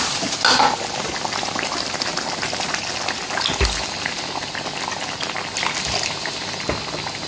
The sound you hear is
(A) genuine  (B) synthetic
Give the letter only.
A